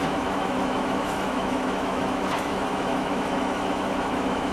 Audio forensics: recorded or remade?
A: remade